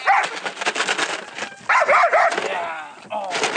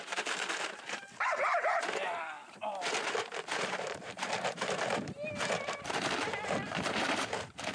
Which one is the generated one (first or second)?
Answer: second